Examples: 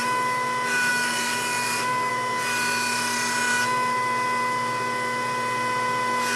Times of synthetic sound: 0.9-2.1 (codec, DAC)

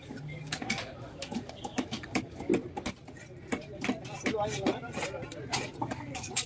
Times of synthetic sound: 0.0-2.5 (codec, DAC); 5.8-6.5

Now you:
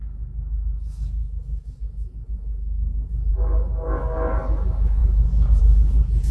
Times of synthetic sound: 0.0-6.3 (codec, DAC)

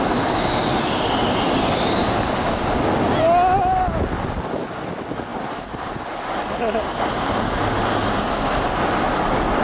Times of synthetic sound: none

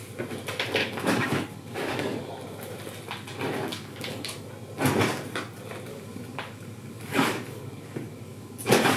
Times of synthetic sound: 0.8-2.3 (codec, DAC); 3.7-4.5; 5.9-9.0

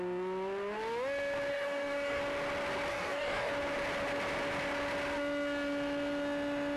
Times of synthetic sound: 1.5-2.2 (codec, DAC); 2.9-3.5